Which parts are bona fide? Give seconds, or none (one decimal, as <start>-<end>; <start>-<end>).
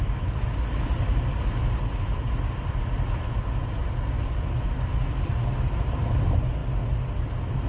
0.0-7.7